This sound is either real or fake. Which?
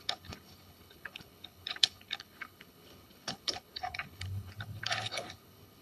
fake